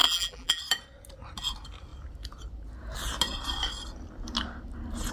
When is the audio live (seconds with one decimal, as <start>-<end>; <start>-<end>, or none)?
0.6-5.1